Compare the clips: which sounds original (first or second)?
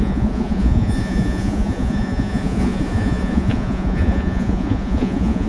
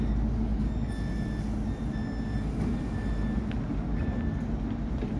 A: second